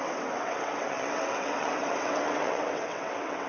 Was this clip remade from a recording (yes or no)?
yes